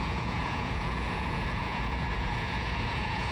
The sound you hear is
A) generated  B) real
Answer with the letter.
A